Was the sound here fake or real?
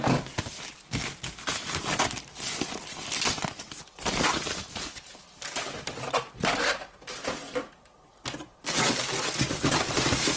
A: real